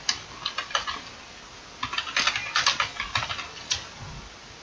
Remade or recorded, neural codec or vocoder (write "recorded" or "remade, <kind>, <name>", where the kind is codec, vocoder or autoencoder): recorded